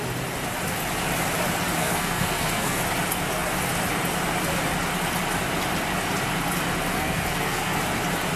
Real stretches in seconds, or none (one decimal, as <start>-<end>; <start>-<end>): 0.0-1.8; 2.8-6.9; 7.8-8.4